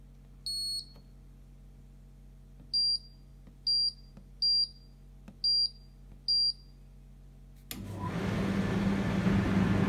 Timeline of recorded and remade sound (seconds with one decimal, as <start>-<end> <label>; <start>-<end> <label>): 0.0-9.9 recorded